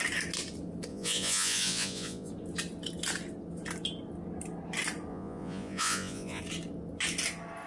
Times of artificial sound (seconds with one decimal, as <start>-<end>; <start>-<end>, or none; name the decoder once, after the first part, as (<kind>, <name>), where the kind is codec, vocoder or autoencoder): 0.9-2.3 (vocoder, Vocos); 5.1-6.4

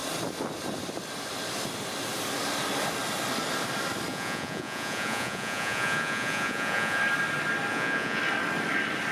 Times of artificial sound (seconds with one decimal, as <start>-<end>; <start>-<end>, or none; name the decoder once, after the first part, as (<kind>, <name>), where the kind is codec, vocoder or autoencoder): 4.1-7.0 (vocoder, Vocos); 7.7-8.2

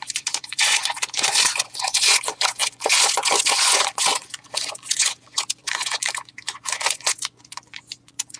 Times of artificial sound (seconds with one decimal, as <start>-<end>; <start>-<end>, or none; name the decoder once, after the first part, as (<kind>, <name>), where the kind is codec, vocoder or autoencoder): 0.0-8.4 (vocoder, Vocos)

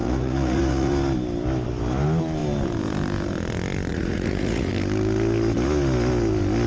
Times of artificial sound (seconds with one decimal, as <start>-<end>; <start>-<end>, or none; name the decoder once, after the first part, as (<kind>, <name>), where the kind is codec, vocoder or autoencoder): 0.0-0.9 (vocoder, Vocos); 3.9-4.7

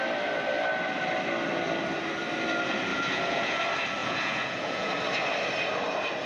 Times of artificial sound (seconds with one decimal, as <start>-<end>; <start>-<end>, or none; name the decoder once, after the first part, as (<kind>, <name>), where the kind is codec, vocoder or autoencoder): 2.9-3.6 (vocoder, Vocos); 4.0-4.9